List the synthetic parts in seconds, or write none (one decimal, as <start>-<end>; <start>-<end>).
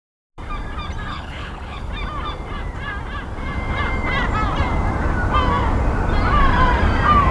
1.1-1.9